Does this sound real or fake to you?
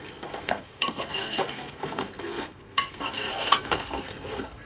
fake